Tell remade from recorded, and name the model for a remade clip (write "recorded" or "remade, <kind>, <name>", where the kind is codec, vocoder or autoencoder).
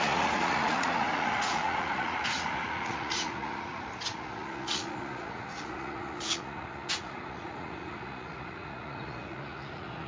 remade, vocoder, Vocos